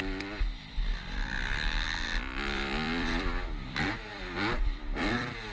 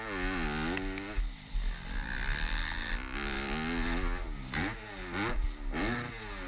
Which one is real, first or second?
second